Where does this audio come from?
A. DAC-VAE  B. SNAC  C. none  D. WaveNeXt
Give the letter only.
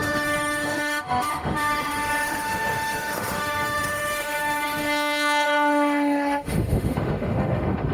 A